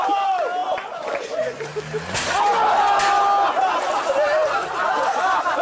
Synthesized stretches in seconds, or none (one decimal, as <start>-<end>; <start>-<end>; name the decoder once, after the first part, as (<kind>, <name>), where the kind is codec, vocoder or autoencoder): none